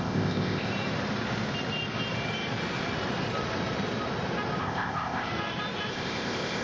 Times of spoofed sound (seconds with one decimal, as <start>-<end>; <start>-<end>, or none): 0.0-0.7; 4.6-5.3; 5.9-6.6

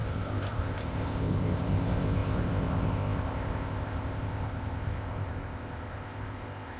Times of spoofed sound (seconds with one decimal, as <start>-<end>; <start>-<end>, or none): 0.0-6.8

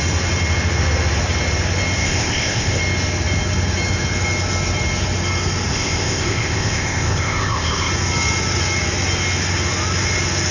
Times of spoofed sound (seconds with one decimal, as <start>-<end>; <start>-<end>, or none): 2.0-2.8; 5.7-7.9

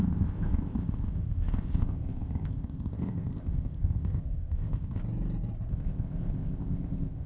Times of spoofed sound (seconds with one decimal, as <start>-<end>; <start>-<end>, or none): 0.0-5.0; 5.7-7.3